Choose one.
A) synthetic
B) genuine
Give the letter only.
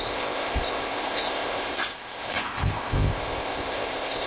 A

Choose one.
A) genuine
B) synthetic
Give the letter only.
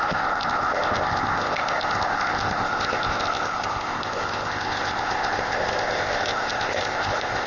B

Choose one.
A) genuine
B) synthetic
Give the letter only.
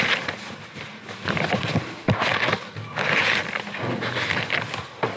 A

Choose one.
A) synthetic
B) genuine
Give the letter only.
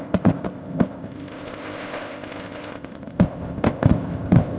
A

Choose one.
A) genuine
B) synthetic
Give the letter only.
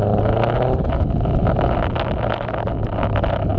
A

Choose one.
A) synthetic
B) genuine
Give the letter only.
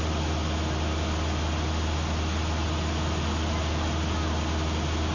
B